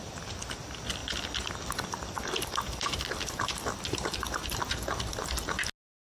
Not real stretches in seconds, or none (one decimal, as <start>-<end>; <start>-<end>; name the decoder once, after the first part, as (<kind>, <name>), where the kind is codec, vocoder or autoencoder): 1.0-4.6 (vocoder, BigVGAN v2)